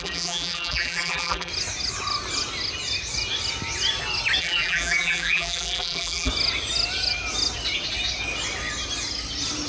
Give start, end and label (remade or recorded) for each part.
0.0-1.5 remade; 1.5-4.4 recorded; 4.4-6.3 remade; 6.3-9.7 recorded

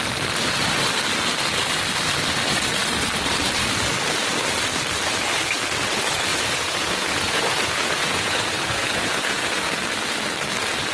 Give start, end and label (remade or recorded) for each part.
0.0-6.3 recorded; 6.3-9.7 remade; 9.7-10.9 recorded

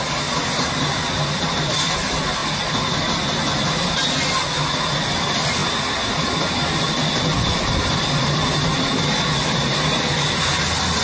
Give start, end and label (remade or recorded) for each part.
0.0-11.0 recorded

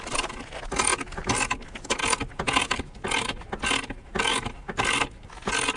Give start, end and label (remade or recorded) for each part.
0.0-5.8 recorded

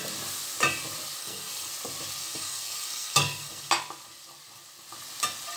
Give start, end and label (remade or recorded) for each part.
0.0-1.2 recorded; 1.2-1.7 remade; 1.7-2.2 recorded; 2.2-3.7 remade; 3.7-5.6 recorded

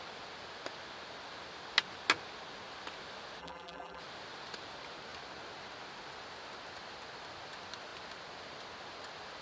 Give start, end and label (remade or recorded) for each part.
0.0-3.4 recorded; 3.4-4.0 remade; 4.0-9.4 recorded

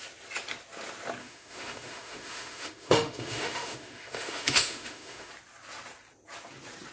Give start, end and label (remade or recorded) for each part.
0.0-1.2 recorded; 1.2-5.3 remade; 5.3-6.9 recorded

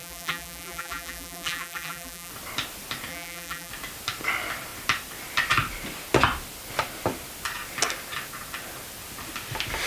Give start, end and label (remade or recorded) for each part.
0.0-2.3 remade; 2.3-3.1 recorded; 3.1-3.7 remade; 3.7-9.9 recorded